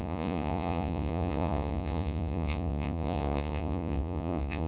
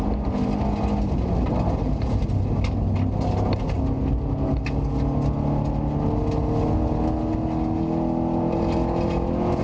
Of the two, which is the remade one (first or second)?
first